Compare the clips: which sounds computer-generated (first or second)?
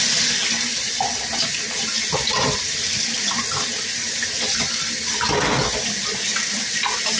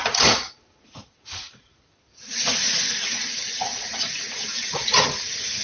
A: second